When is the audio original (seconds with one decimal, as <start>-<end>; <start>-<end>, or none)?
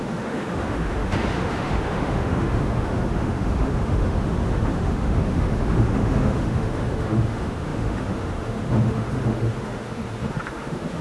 none